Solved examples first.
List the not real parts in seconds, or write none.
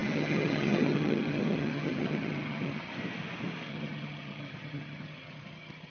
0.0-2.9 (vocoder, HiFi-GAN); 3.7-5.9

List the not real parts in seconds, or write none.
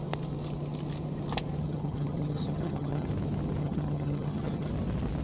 1.6-3.1 (vocoder, HiFi-GAN); 3.6-4.7